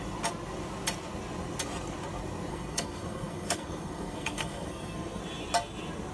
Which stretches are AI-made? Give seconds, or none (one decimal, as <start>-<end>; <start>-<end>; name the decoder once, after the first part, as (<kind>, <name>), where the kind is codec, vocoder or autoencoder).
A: 2.5-5.2 (codec, SNAC)

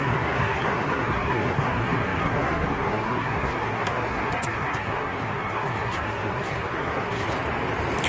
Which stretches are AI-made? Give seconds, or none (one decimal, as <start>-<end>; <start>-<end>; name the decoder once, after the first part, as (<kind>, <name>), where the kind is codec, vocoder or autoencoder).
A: 0.0-7.3 (codec, SNAC)